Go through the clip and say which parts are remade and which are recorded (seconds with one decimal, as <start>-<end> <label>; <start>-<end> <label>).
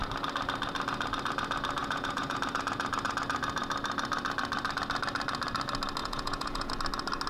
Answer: 0.0-1.8 recorded; 1.8-2.4 remade; 2.4-6.0 recorded; 6.0-6.7 remade; 6.7-7.3 recorded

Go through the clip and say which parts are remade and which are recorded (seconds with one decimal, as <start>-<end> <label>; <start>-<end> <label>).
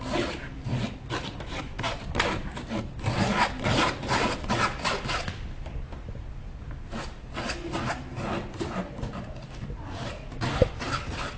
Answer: 0.0-11.4 recorded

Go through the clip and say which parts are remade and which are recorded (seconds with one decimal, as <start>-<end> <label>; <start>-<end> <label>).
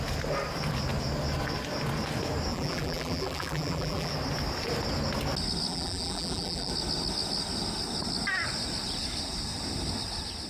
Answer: 0.0-2.5 recorded; 2.5-4.1 remade; 4.1-5.7 recorded; 5.7-6.7 remade; 6.7-10.5 recorded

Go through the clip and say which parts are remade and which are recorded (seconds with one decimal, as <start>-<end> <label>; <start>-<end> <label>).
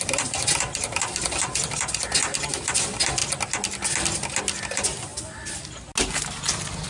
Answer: 0.0-3.2 remade; 3.2-4.6 recorded; 4.6-5.1 remade; 5.1-6.1 recorded; 6.1-6.9 remade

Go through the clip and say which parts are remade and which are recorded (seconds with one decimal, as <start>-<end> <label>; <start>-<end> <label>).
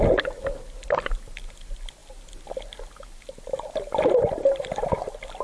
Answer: 0.0-5.4 recorded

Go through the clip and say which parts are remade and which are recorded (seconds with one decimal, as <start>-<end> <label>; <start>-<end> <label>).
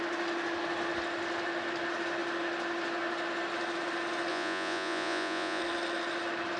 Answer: 0.0-4.3 recorded; 4.3-5.6 remade; 5.6-6.6 recorded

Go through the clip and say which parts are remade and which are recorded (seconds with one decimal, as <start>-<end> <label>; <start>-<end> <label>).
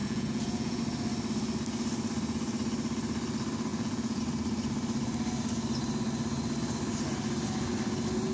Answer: 0.0-0.8 remade; 0.8-3.7 recorded; 3.7-4.2 remade; 4.2-8.3 recorded